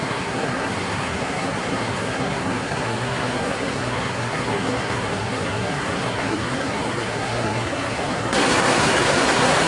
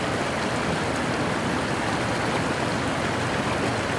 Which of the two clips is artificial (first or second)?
first